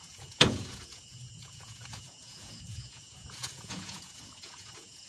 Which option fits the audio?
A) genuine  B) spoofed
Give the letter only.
B